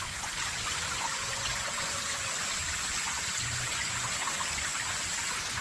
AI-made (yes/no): yes